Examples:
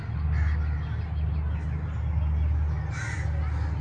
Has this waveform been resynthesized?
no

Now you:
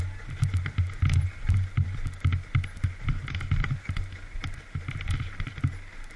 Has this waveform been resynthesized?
no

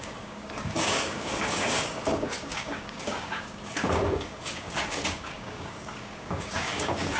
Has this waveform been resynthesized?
yes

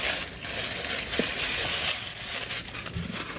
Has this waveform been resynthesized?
no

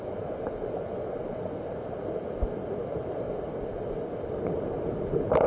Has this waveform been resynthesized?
no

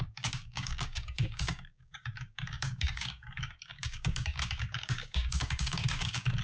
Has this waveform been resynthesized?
yes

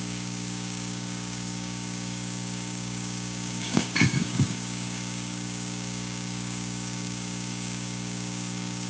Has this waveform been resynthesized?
yes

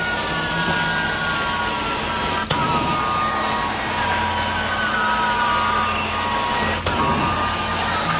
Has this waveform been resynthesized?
no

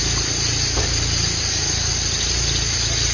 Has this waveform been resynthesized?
no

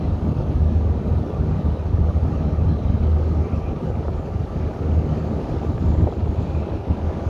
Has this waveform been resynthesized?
yes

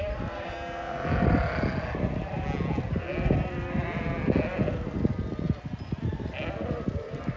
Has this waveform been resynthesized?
no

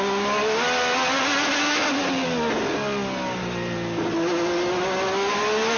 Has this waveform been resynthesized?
no